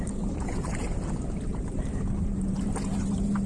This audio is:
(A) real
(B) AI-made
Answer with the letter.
B